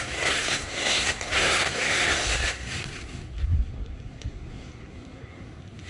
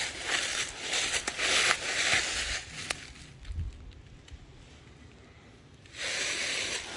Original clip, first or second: second